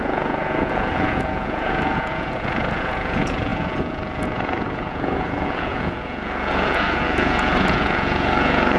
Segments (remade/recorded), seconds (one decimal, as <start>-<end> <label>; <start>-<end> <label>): 0.0-8.8 remade

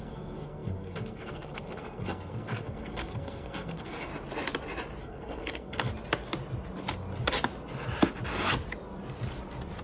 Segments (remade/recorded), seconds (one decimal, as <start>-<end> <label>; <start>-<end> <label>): 0.0-4.1 remade; 4.1-5.0 recorded; 5.0-5.9 remade; 5.9-9.8 recorded

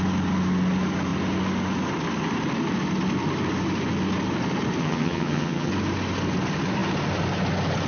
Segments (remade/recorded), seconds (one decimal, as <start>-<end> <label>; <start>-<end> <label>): 0.0-4.8 recorded; 4.8-5.7 remade; 5.7-7.9 recorded

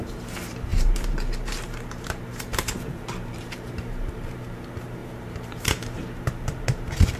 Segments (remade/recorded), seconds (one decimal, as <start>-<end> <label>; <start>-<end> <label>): 0.0-7.2 remade

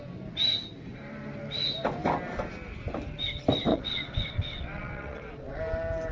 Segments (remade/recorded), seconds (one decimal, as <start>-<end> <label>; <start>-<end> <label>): 0.0-3.7 recorded; 3.7-5.6 remade; 5.6-6.1 recorded

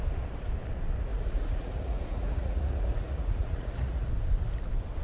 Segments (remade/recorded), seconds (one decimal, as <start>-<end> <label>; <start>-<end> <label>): 0.0-1.1 recorded; 1.1-4.1 remade; 4.1-5.0 recorded